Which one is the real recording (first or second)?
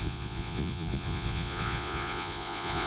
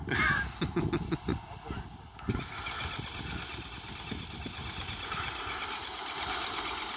second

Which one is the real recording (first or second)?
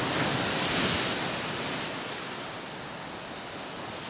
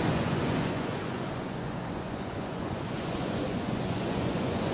first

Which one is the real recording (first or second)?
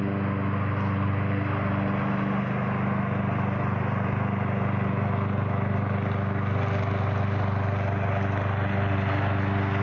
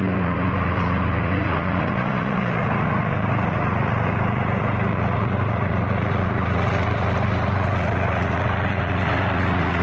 first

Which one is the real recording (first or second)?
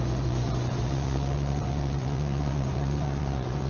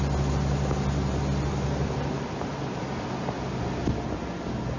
second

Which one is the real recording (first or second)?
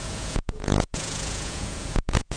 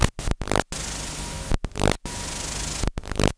second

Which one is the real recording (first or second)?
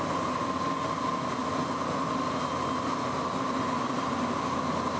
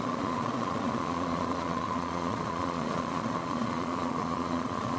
first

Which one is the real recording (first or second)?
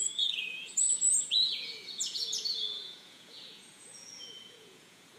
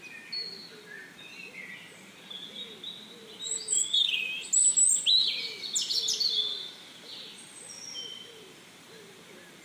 second